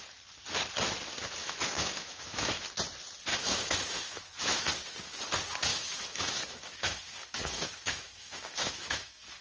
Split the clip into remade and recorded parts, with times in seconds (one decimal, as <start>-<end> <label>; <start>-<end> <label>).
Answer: 0.0-1.4 recorded; 1.4-2.6 remade; 2.6-3.3 recorded; 3.3-4.7 remade; 4.7-5.7 recorded; 5.7-9.4 remade